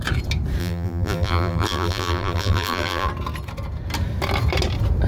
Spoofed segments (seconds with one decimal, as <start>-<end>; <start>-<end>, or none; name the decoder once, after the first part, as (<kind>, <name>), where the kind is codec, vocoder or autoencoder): 0.6-3.1 (vocoder, BigVGAN v2)